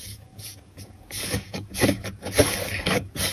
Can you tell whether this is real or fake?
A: fake